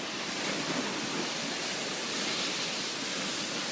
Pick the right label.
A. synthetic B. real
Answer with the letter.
B